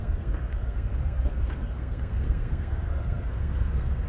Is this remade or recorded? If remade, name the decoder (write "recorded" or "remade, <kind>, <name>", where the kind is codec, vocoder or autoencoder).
remade, codec, SNAC